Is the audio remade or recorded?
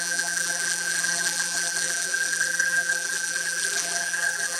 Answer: remade